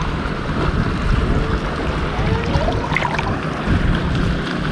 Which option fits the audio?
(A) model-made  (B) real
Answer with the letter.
B